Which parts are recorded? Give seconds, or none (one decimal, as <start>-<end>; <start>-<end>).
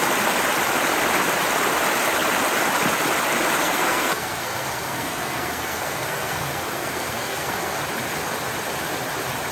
0.0-3.6; 7.8-9.5